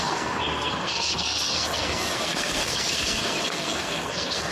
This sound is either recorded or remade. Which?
remade